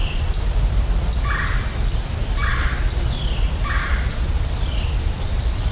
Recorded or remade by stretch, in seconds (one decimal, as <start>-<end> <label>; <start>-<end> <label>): 0.0-5.7 recorded